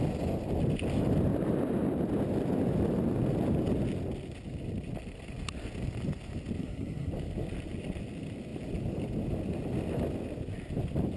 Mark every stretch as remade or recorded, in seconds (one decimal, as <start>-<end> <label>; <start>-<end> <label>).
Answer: 0.0-6.6 recorded; 6.6-7.1 remade; 7.1-11.2 recorded